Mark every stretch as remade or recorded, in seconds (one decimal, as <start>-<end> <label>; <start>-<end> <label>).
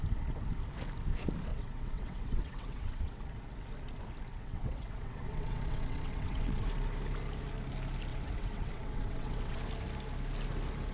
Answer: 0.0-1.5 recorded; 1.5-3.2 remade; 3.2-4.3 recorded; 4.3-6.7 remade; 6.7-8.1 recorded; 8.1-9.6 remade; 9.6-10.9 recorded